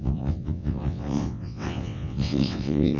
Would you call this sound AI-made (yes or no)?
yes